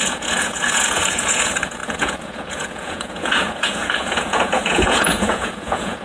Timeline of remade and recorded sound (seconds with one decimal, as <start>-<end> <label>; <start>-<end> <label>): 0.0-6.0 remade